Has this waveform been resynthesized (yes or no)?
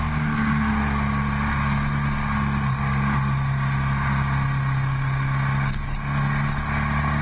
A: no